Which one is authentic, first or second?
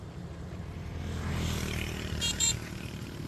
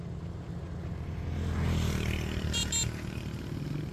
second